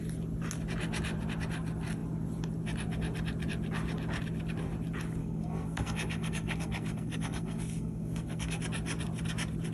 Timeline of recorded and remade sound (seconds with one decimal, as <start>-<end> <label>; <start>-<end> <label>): 0.0-5.2 recorded; 5.2-8.6 remade; 8.6-9.7 recorded